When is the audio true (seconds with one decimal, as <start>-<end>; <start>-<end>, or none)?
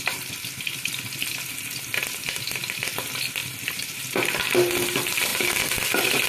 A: 0.0-6.3